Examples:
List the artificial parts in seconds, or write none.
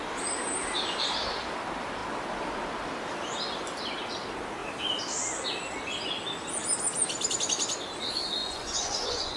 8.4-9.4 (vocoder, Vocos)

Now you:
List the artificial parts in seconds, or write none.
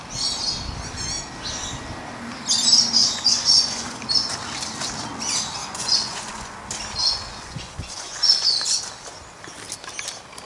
3.0-4.0 (vocoder, Vocos); 5.6-6.5; 7.0-8.8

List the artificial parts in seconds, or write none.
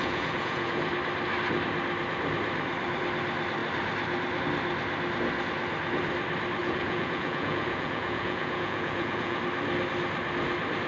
0.0-0.9 (vocoder, Vocos); 6.6-9.4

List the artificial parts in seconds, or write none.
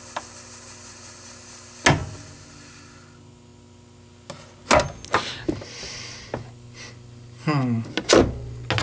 none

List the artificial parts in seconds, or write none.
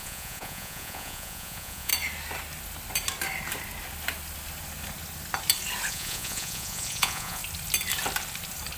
0.0-1.9 (vocoder, Vocos); 5.9-7.4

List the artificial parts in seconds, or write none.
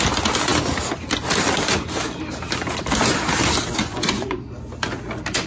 3.8-4.4 (vocoder, Vocos)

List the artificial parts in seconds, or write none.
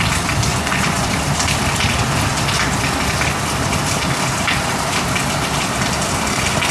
0.5-1.1 (vocoder, Vocos)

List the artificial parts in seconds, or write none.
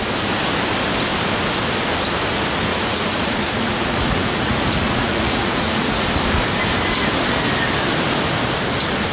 2.7-6.2 (vocoder, Vocos)